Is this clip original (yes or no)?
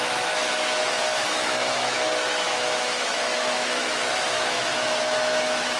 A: no